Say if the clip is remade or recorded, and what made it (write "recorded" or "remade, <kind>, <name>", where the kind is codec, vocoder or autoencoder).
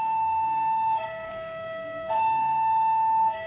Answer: remade, codec, SNAC